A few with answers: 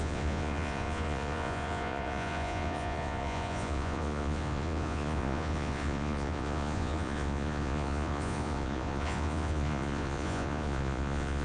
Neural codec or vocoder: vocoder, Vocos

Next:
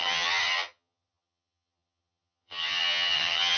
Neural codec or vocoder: vocoder, HiFi-GAN